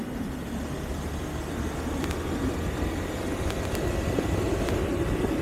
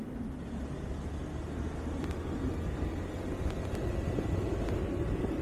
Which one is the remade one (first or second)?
first